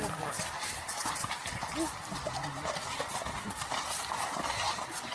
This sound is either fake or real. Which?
fake